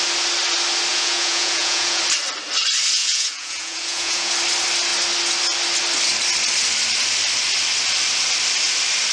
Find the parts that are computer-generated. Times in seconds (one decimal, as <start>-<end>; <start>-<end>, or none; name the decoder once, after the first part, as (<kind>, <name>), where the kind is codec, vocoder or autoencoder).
0.9-2.0 (vocoder, Vocos); 3.0-4.3